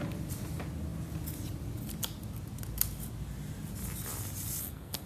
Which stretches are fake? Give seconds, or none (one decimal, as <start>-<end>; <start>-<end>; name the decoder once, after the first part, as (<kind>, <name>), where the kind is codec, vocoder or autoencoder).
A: 4.6-5.1 (codec, SNAC)